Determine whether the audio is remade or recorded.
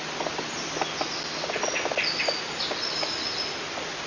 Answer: recorded